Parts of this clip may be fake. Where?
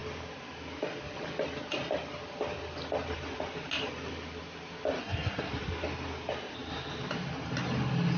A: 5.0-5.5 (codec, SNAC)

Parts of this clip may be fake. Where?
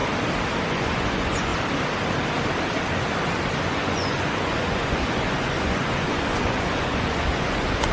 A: 0.7-1.5 (vocoder, Vocos); 3.6-7.9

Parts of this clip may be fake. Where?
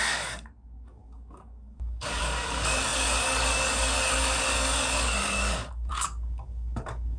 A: 0.0-7.2 (codec, DAC)